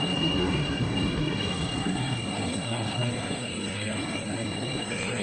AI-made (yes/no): yes